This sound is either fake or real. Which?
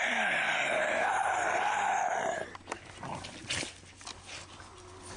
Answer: real